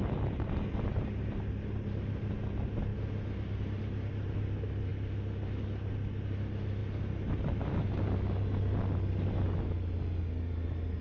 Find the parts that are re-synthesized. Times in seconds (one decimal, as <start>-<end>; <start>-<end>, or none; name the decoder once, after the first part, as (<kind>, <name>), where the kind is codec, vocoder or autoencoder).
none